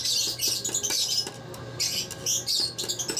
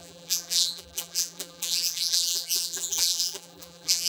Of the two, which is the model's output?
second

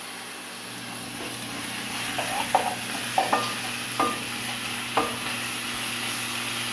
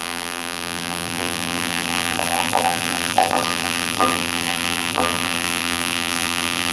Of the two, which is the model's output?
second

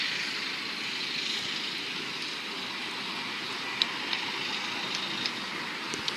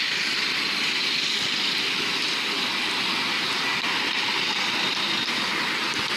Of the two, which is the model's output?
second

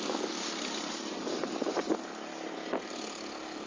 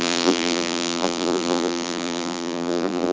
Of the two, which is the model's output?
second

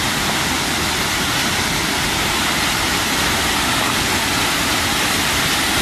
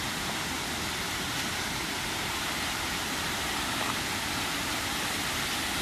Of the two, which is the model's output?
second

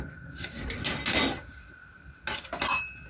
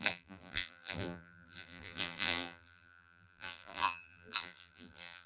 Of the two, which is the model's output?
second